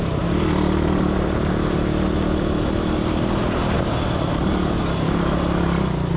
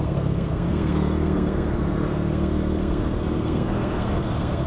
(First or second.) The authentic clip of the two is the first